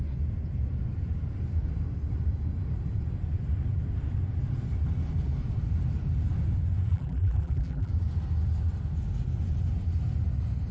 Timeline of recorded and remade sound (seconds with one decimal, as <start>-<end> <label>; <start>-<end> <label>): 0.0-6.9 recorded; 6.9-7.9 remade; 7.9-10.7 recorded